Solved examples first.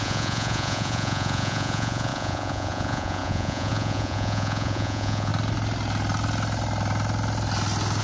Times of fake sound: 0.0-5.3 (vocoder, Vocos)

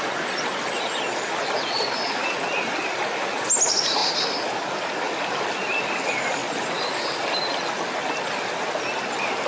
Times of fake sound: none

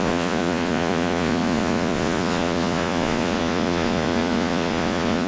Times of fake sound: 0.0-5.3 (vocoder, Vocos)

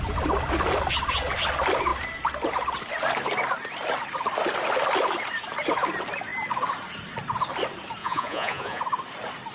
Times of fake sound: 8.0-8.8 (vocoder, Vocos)